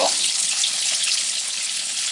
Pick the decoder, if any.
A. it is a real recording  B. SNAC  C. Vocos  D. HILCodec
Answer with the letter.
D